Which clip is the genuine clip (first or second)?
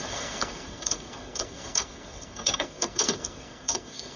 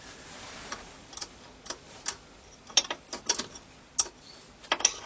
second